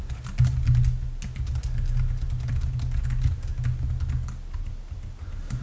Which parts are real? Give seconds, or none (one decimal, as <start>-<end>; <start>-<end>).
0.0-5.6